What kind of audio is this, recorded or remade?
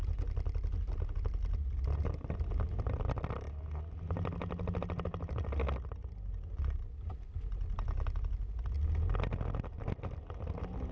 recorded